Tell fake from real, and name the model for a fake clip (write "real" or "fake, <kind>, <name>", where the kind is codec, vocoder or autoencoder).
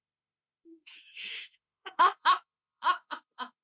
fake, autoencoder, DAC-VAE